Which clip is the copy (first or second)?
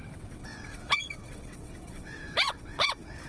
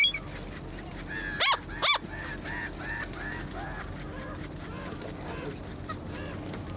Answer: first